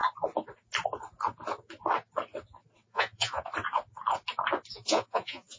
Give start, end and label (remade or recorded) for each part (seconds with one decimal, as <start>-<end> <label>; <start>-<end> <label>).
0.0-2.9 recorded; 2.9-3.4 remade; 3.4-4.7 recorded; 4.7-5.6 remade